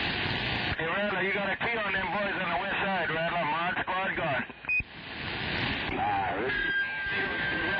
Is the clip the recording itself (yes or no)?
yes